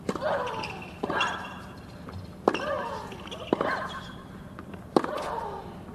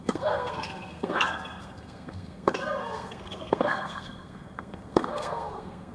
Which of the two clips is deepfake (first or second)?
second